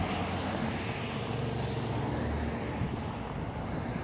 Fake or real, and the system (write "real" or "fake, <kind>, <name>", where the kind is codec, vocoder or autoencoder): real